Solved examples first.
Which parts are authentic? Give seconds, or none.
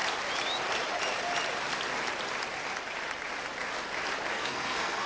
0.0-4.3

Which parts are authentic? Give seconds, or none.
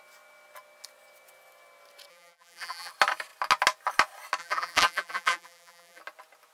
0.0-2.1; 2.9-4.4; 6.0-6.5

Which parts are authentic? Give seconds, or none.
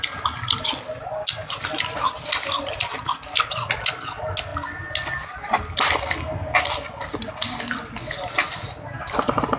0.0-9.6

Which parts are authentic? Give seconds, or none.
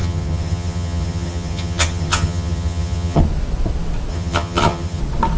3.2-4.1; 5.0-5.4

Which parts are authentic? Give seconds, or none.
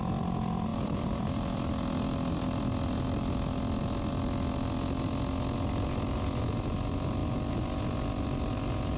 0.0-9.0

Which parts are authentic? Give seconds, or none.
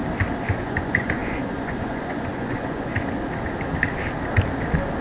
0.0-0.6; 2.9-5.0